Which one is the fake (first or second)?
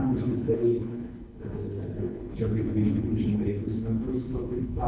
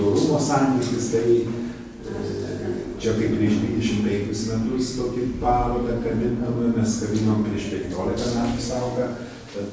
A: first